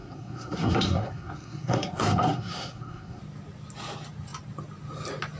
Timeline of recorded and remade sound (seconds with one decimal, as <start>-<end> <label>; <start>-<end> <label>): 0.0-3.2 remade; 3.2-5.4 recorded